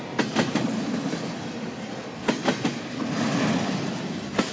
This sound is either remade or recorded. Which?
recorded